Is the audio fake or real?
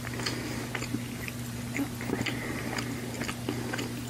real